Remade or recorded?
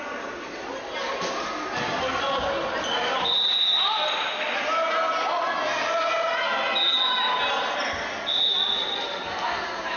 recorded